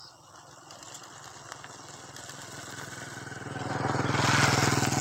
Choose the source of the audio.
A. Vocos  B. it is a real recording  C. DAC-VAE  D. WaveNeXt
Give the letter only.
B